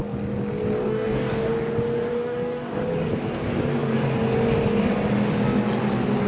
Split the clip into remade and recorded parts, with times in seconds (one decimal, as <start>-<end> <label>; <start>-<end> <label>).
0.0-0.8 recorded; 0.8-1.5 remade; 1.5-2.1 recorded; 2.1-2.8 remade; 2.8-6.3 recorded